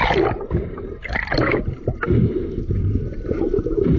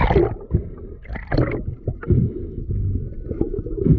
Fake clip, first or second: first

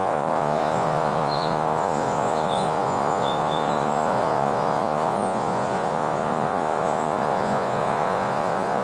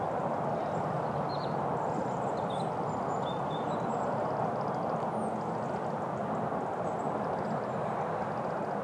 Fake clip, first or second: first